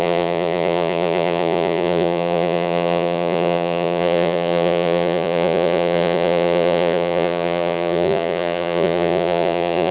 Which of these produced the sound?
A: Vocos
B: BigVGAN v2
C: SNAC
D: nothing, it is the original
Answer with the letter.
A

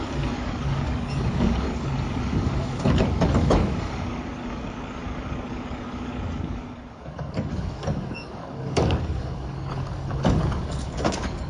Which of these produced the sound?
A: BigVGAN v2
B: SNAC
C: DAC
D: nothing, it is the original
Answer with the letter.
C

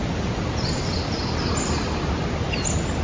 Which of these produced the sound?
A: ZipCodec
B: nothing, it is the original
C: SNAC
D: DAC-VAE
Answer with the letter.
B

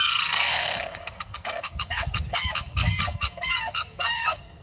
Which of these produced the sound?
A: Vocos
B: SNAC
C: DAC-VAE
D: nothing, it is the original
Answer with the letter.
B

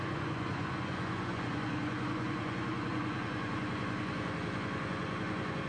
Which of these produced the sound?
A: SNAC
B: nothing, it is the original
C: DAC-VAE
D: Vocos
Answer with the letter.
D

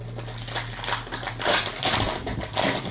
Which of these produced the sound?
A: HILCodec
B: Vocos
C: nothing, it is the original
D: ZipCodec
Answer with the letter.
C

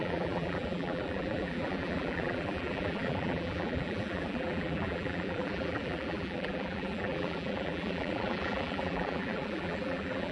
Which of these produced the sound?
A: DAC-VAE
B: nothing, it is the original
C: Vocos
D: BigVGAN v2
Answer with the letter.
D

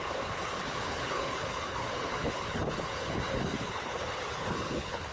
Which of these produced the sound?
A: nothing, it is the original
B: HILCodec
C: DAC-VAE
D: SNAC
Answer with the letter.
B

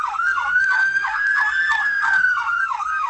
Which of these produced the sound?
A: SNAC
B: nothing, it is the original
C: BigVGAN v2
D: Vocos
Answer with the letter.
A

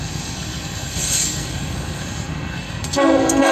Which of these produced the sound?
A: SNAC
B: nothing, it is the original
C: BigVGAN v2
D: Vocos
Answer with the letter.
A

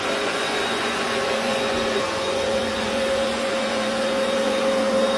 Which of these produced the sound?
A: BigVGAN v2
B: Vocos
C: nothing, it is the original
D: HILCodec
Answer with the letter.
B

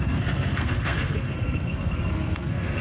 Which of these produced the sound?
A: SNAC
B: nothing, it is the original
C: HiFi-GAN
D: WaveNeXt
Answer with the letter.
A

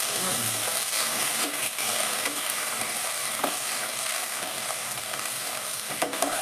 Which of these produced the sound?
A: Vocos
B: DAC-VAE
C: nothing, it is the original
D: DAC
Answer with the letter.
D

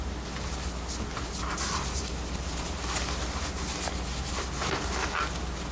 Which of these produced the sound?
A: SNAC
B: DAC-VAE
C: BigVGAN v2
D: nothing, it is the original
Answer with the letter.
D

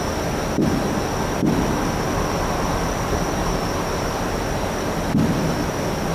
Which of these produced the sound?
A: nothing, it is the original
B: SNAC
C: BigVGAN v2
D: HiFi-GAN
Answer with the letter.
A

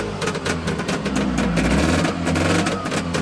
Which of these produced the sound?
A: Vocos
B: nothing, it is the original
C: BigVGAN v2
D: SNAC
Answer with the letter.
B